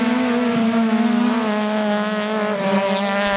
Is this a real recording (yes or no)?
yes